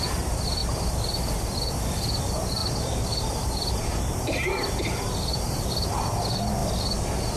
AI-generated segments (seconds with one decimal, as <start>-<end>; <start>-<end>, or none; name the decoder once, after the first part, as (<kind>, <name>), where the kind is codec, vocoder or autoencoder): 2.6-5.7 (vocoder, BigVGAN v2)